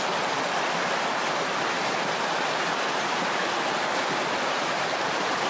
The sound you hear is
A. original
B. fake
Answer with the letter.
A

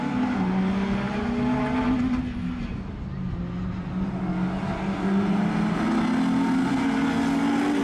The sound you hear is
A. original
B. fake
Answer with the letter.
A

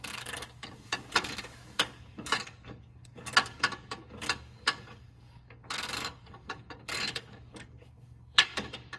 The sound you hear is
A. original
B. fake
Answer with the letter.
B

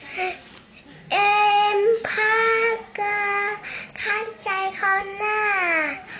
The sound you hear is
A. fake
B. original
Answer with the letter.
B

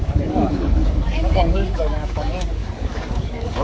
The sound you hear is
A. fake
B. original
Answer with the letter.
A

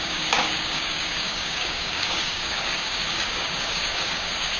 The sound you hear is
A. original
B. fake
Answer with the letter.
B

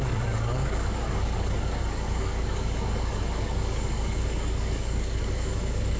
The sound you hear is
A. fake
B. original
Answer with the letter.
A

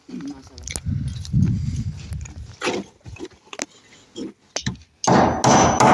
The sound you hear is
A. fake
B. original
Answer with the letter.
B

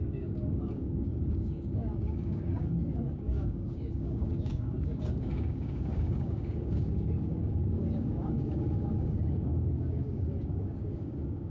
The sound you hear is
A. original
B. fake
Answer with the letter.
B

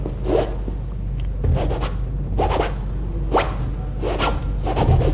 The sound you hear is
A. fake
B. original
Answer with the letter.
B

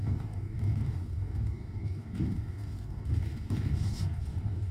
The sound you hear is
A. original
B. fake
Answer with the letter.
B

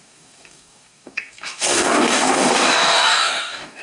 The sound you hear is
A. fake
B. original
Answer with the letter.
A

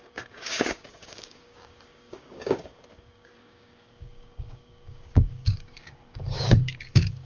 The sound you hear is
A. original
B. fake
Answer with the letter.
B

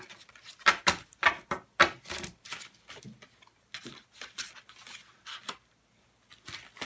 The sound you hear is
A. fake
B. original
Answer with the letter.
B